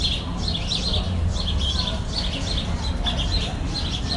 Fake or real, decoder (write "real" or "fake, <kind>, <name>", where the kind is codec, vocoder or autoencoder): real